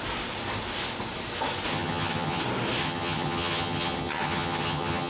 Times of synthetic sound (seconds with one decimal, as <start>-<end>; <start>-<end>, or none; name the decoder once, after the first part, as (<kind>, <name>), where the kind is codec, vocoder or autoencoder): 1.7-2.4 (vocoder, HiFi-GAN); 2.8-5.1